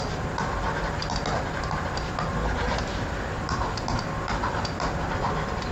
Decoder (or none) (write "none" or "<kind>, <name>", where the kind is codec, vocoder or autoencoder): none